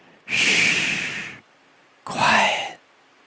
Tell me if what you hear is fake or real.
real